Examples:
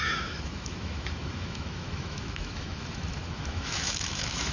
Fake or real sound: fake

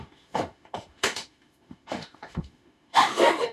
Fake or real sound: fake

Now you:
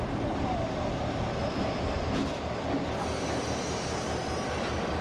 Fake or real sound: real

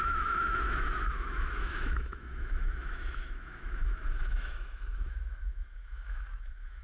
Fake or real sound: fake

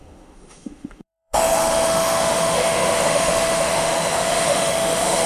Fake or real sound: fake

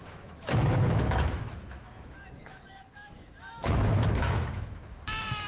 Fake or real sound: fake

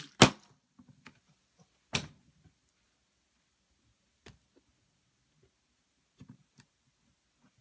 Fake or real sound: real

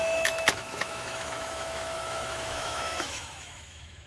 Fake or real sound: fake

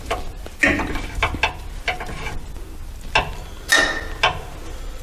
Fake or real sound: real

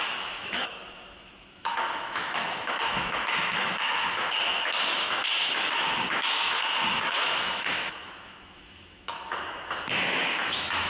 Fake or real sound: fake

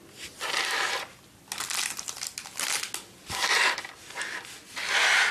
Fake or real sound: real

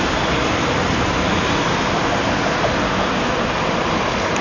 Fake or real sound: real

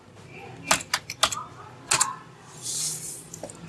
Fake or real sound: real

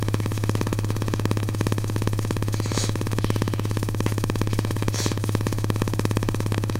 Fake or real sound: fake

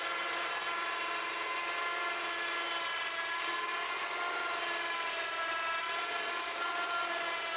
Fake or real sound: real